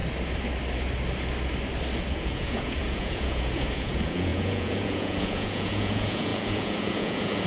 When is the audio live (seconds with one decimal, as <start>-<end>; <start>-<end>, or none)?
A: 0.0-2.0